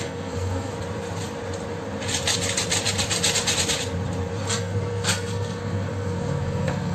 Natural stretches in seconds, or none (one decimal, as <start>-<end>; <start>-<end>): 0.7-4.5